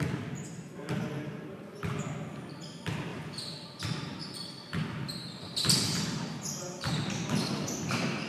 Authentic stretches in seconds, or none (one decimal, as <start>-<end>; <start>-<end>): 0.0-3.1; 6.4-8.3